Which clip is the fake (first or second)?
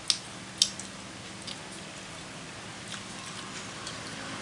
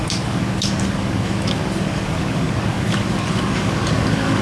second